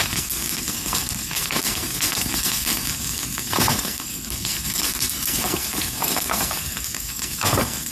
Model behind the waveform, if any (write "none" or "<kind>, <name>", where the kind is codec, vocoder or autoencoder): codec, SNAC